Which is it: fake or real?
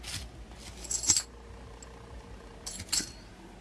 real